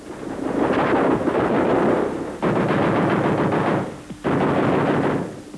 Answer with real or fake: real